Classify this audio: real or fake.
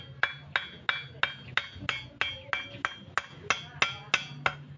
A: real